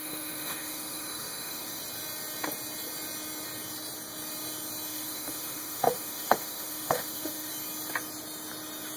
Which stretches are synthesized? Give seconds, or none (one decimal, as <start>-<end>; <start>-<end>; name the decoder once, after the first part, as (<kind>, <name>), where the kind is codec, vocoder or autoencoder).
0.0-1.8 (autoencoder, DAC-VAE); 4.9-7.5